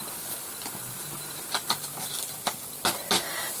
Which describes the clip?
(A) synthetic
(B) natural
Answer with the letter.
B